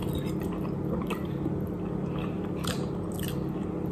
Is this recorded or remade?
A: recorded